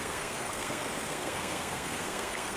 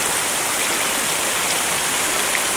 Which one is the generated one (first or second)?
first